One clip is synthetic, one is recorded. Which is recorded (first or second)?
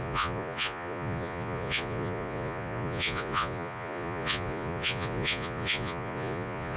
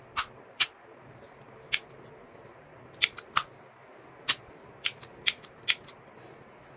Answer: second